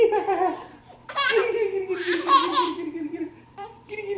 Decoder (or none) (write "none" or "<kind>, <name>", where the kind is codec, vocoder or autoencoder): vocoder, BigVGAN v2